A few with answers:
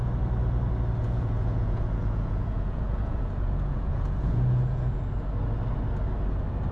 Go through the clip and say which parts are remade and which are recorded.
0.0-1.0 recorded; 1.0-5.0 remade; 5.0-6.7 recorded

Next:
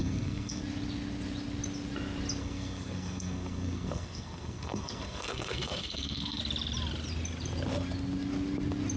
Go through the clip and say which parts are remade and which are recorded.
0.0-0.6 remade; 0.6-2.4 recorded; 2.4-6.4 remade; 6.4-9.0 recorded

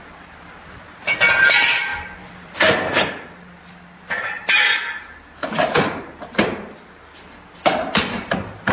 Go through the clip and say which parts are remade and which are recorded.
0.0-8.7 recorded

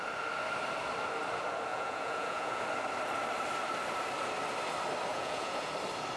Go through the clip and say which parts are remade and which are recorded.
0.0-1.7 recorded; 1.7-2.6 remade; 2.6-5.1 recorded; 5.1-5.7 remade; 5.7-6.2 recorded

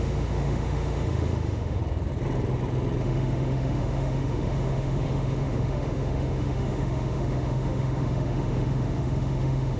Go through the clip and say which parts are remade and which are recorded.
0.0-1.8 remade; 1.8-3.0 recorded; 3.0-9.8 remade

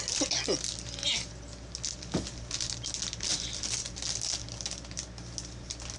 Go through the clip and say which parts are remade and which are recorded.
0.0-3.3 recorded; 3.3-3.9 remade; 3.9-6.0 recorded

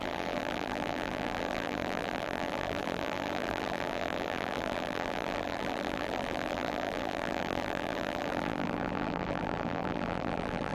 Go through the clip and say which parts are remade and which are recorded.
0.0-10.7 remade

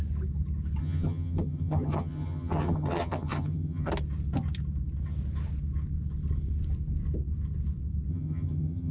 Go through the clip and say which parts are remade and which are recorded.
0.0-0.8 recorded; 0.8-3.9 remade; 3.9-8.1 recorded; 8.1-8.9 remade